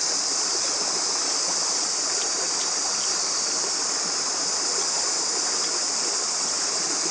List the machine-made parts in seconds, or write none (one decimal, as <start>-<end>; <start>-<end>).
none